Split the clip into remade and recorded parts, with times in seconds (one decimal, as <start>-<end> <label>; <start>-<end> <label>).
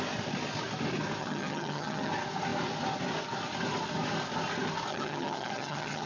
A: 0.0-1.2 recorded; 1.2-2.1 remade; 2.1-4.9 recorded; 4.9-6.1 remade